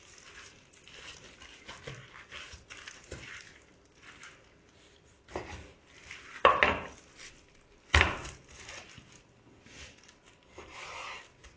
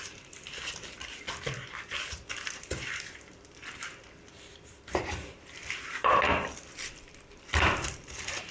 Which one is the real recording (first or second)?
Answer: first